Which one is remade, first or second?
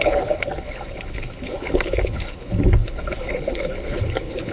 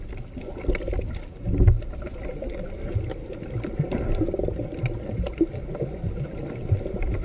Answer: first